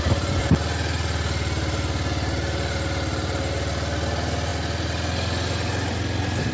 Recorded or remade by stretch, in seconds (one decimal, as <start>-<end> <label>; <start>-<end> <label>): 0.0-6.5 recorded

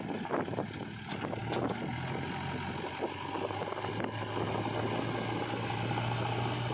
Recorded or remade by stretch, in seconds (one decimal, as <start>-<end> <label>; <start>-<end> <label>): 0.0-6.7 recorded

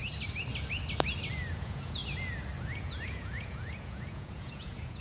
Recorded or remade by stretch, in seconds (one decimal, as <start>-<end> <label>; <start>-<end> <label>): 0.0-1.5 recorded; 1.5-2.0 remade; 2.0-2.6 recorded; 2.6-5.0 remade

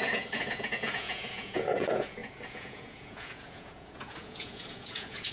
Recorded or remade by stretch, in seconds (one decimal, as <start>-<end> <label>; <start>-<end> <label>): 0.0-5.3 remade

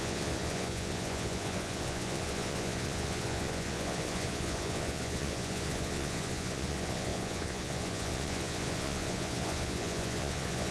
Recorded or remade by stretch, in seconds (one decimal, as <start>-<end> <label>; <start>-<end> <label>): 0.0-10.7 remade